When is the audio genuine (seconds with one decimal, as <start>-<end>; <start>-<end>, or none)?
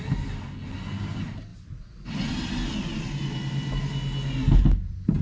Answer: 0.0-5.2